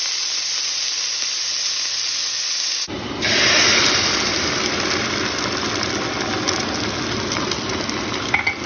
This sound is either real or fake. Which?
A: real